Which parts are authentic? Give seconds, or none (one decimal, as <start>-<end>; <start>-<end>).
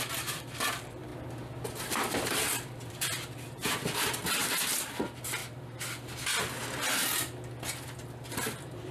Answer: 1.1-1.8; 5.4-8.3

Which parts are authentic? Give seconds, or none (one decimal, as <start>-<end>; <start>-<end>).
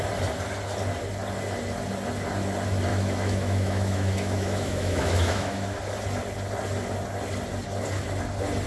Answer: 0.0-2.9; 5.8-8.7